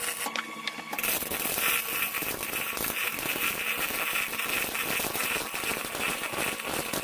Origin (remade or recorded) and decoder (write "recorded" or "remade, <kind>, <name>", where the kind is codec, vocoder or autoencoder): recorded